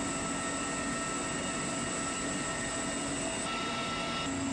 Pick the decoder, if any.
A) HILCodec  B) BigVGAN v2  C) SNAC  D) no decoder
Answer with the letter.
D